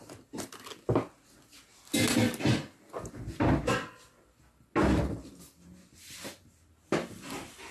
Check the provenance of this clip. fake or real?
real